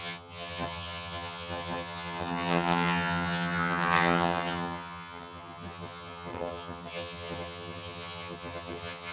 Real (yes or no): no